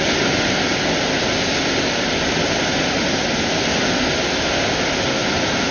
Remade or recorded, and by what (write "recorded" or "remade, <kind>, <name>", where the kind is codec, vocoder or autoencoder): recorded